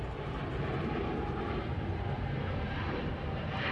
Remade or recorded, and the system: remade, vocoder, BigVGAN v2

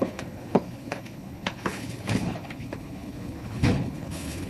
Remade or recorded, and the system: remade, codec, HILCodec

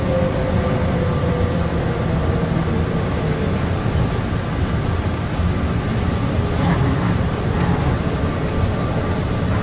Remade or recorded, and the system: recorded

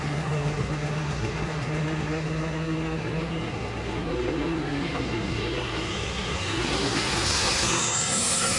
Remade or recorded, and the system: remade, codec, SNAC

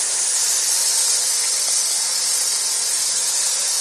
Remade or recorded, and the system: recorded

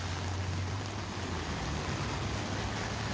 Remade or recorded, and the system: recorded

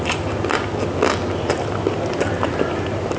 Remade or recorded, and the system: recorded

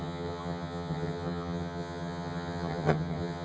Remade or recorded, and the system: remade, vocoder, HiFi-GAN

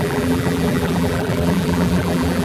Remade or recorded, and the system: remade, vocoder, BigVGAN v2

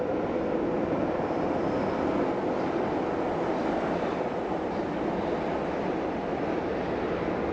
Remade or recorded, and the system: recorded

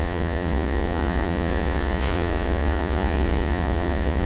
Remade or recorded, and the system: remade, vocoder, Vocos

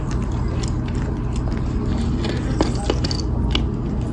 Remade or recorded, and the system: recorded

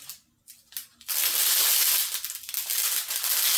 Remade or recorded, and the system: recorded